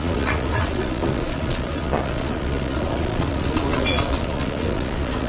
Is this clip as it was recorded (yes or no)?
no